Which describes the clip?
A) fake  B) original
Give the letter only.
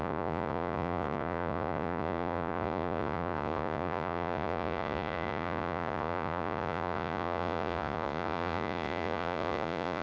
A